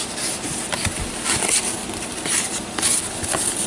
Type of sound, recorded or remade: recorded